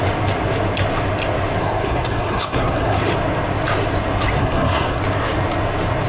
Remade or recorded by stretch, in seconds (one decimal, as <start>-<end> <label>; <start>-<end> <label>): 0.0-1.6 recorded; 1.6-3.0 remade; 3.0-4.4 recorded; 4.4-5.0 remade; 5.0-6.1 recorded